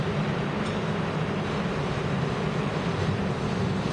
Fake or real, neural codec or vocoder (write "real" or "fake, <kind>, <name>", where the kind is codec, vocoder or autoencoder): real